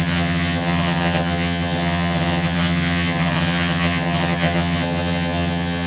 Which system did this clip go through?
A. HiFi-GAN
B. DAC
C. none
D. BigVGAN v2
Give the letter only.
A